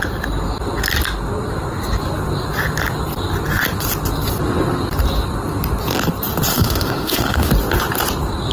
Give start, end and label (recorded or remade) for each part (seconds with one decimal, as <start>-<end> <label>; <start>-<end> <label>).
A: 0.0-6.5 recorded; 6.5-7.5 remade; 7.5-8.5 recorded